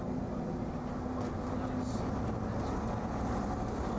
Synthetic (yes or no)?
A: no